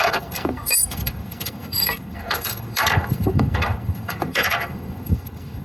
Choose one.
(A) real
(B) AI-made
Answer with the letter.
B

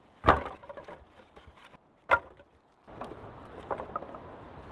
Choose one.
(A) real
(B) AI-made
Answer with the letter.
A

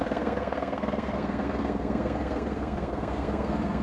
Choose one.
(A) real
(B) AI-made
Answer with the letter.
B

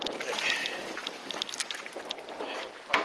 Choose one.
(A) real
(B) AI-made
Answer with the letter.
A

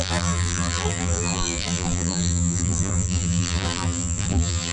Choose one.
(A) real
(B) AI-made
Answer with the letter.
B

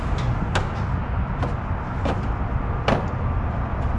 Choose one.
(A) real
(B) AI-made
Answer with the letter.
A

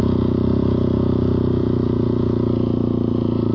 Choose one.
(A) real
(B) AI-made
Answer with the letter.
B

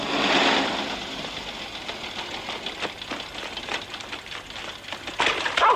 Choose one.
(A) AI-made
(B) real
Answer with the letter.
B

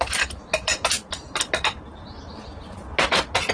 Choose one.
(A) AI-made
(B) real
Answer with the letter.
B